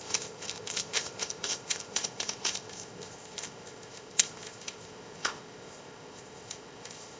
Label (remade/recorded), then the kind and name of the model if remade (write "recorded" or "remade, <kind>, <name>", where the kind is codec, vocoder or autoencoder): remade, codec, ZipCodec